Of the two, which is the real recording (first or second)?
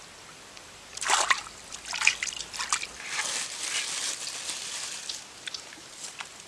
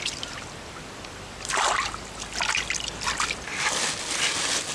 second